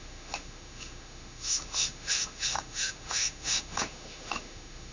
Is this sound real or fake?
fake